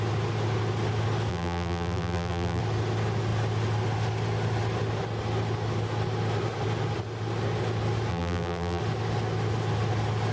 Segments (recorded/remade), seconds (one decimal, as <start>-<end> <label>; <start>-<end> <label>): 0.0-1.3 recorded; 1.3-2.6 remade; 2.6-8.1 recorded; 8.1-8.8 remade; 8.8-10.3 recorded

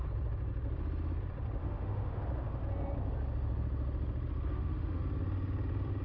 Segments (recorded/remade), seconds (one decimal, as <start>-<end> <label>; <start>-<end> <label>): 0.0-1.6 recorded; 1.6-2.2 remade; 2.2-4.5 recorded; 4.5-5.0 remade; 5.0-6.0 recorded